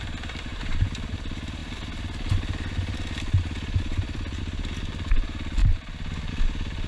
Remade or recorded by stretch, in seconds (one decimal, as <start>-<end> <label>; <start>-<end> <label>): 0.0-0.5 recorded; 0.5-1.1 remade; 1.1-5.6 recorded; 5.6-6.3 remade; 6.3-6.9 recorded